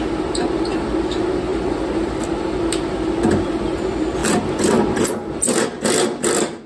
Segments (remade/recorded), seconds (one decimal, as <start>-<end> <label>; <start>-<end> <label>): 0.0-4.2 remade; 4.2-5.1 recorded; 5.1-6.7 remade